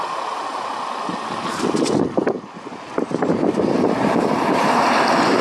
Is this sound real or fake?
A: real